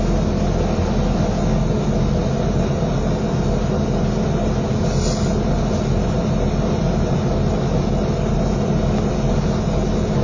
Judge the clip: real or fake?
real